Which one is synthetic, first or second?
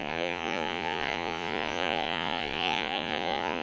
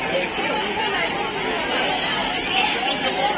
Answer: first